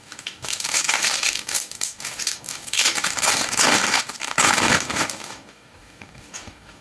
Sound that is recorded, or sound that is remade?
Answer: remade